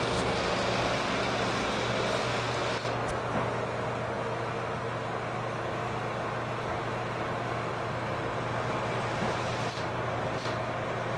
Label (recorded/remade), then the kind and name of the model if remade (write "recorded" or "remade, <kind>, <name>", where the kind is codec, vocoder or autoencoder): recorded